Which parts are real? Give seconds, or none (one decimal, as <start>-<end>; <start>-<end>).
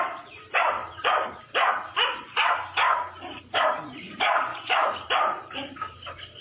none